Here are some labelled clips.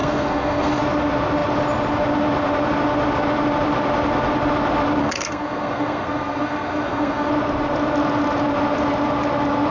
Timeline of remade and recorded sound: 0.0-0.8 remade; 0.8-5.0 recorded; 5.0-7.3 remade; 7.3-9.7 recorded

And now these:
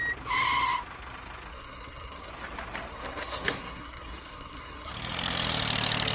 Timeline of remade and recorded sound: 0.0-1.5 recorded; 1.5-2.3 remade; 2.3-2.9 recorded; 2.9-4.9 remade; 4.9-6.1 recorded

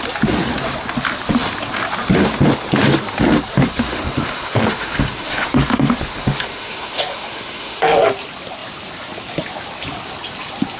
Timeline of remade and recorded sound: 0.0-3.5 recorded; 3.5-8.1 remade; 8.1-10.8 recorded

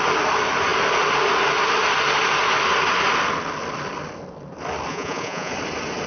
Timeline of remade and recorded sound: 0.0-4.9 recorded; 4.9-5.5 remade; 5.5-6.1 recorded

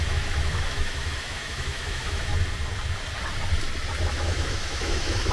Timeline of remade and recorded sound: 0.0-2.3 remade; 2.3-4.1 recorded; 4.1-5.3 remade

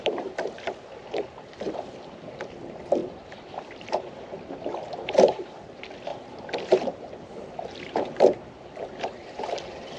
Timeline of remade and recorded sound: 0.0-10.0 remade

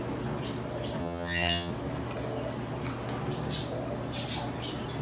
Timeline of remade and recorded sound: 0.0-1.0 recorded; 1.0-1.7 remade; 1.7-5.0 recorded